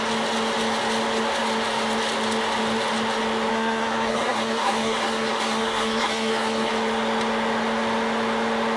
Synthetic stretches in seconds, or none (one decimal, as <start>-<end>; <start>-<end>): 3.5-6.7